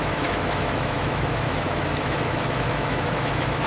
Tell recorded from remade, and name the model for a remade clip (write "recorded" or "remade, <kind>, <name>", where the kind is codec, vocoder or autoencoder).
remade, autoencoder, DAC-VAE